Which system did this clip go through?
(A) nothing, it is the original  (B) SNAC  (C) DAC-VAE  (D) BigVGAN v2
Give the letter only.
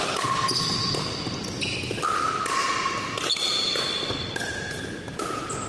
A